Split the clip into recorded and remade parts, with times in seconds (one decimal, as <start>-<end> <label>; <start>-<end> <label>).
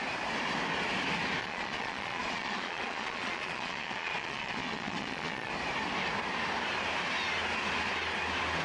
0.0-1.4 recorded; 1.4-5.5 remade; 5.5-8.6 recorded